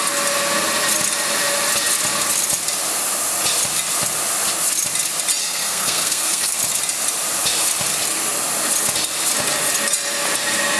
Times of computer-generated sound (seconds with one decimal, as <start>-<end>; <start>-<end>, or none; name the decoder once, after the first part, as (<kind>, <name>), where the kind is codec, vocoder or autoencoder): 5.4-6.6 (codec, SNAC)